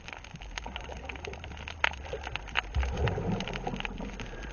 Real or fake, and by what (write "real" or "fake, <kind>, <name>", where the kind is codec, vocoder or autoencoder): real